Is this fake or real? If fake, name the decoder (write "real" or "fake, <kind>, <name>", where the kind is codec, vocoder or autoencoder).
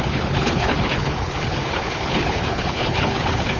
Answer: fake, codec, HILCodec